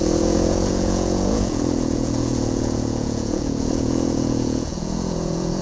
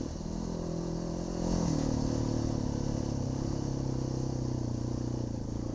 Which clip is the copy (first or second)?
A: first